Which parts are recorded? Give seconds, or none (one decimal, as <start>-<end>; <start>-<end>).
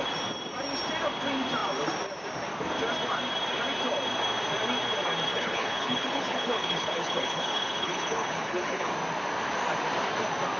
0.0-5.3; 8.9-10.6